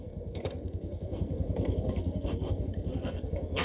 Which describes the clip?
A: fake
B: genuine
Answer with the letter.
A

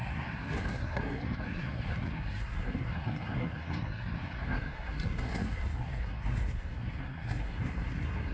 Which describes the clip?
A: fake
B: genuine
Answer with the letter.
A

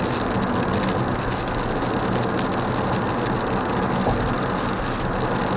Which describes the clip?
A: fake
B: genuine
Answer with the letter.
B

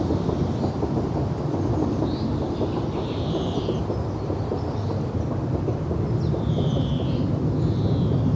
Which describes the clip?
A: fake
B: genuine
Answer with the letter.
B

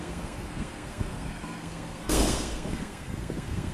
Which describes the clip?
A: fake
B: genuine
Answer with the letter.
A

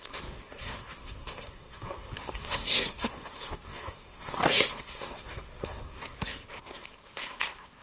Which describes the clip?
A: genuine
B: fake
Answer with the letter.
B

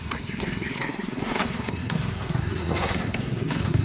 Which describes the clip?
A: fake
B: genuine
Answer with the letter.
A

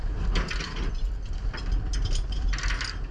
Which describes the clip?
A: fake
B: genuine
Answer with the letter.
B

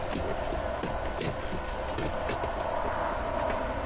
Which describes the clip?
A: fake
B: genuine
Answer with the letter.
B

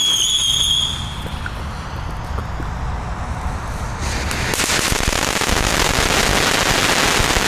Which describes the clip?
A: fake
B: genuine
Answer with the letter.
B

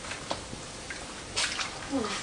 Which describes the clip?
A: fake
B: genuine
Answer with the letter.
B